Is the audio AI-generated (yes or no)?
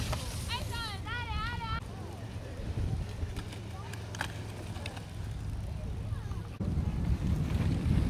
no